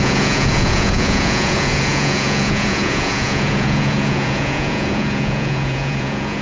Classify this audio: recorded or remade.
remade